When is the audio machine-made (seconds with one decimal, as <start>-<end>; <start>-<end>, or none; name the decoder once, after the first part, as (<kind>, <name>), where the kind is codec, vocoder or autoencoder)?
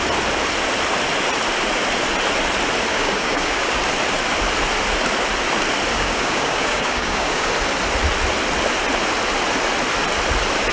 2.9-3.8 (codec, DAC); 5.9-7.5